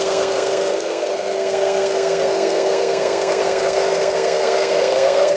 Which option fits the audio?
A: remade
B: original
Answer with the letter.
A